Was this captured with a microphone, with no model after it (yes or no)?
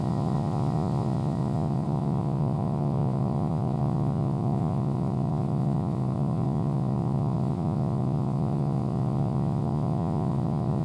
no